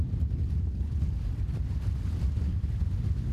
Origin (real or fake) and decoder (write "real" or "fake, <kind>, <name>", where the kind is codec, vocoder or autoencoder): fake, vocoder, BigVGAN v2